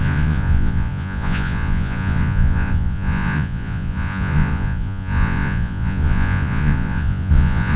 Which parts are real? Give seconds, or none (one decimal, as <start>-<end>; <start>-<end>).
none